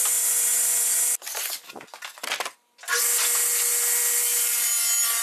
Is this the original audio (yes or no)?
yes